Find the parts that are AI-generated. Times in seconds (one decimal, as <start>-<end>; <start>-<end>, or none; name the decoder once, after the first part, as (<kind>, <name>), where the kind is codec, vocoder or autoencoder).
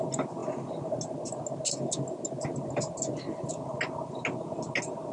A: none